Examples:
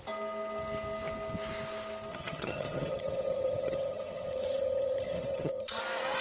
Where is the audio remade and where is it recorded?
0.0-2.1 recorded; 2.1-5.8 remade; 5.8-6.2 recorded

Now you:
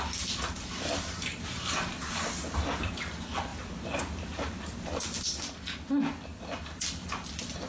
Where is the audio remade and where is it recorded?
0.0-7.7 recorded

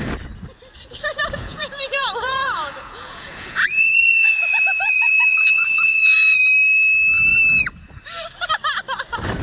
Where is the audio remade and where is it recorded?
0.0-1.4 recorded; 1.4-6.4 remade; 6.4-9.4 recorded

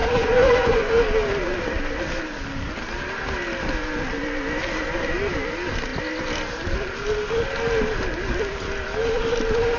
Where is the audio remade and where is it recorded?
0.0-0.9 remade; 0.9-9.8 recorded

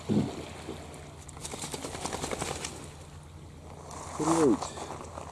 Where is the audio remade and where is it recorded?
0.0-5.3 recorded